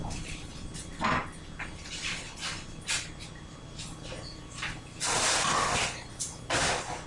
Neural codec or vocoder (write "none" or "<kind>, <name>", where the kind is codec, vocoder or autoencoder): none